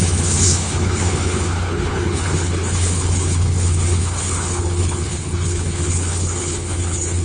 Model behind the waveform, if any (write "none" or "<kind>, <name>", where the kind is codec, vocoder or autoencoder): codec, HILCodec